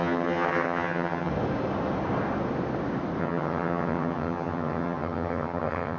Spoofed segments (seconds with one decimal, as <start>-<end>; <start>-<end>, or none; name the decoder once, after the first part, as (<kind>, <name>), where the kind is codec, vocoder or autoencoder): 0.0-1.3 (vocoder, HiFi-GAN); 3.2-6.0